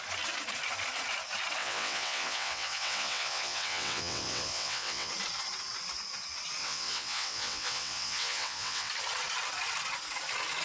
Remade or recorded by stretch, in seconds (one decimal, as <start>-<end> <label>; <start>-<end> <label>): 0.0-1.6 recorded; 1.6-5.1 remade; 5.1-6.6 recorded; 6.6-8.9 remade; 8.9-10.6 recorded